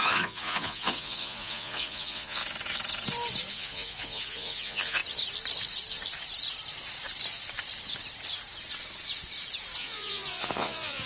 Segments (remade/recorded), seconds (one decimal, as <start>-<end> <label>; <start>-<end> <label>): 0.0-2.4 remade; 2.4-3.5 recorded; 3.5-5.0 remade; 5.0-9.8 recorded; 9.8-11.1 remade